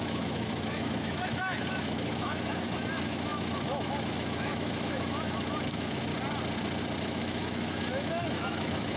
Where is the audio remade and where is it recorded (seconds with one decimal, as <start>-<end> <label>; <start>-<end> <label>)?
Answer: 0.0-6.1 remade; 6.1-7.0 recorded; 7.0-9.0 remade